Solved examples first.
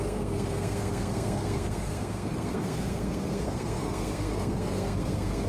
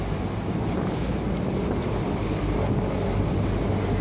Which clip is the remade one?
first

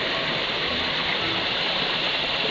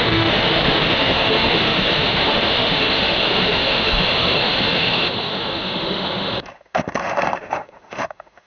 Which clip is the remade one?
second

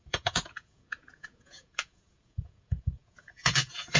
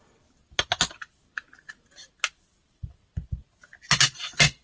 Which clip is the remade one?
first